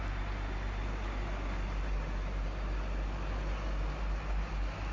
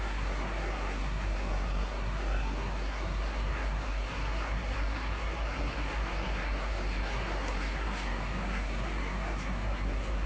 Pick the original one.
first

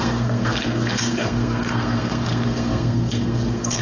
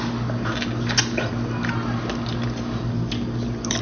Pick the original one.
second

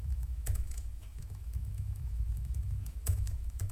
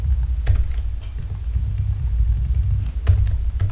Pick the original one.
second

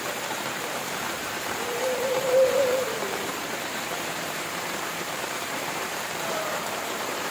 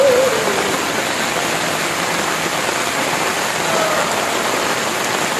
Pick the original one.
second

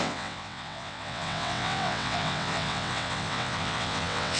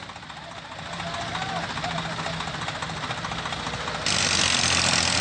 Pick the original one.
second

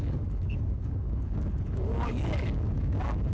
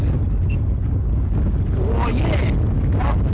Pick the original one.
second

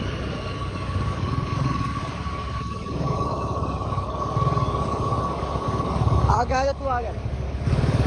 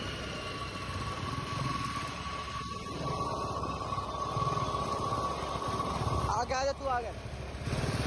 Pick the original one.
second